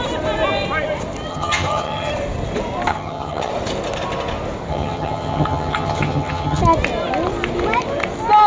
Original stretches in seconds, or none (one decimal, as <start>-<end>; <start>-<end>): 0.0-1.3; 2.1-2.9; 3.5-4.7; 6.6-8.5